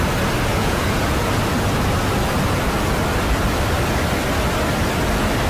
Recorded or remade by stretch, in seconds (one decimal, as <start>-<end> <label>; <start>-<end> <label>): 0.0-0.5 recorded; 0.5-1.4 remade; 1.4-5.5 recorded